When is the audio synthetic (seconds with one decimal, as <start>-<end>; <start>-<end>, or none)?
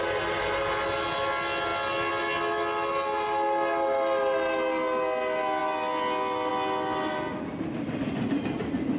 none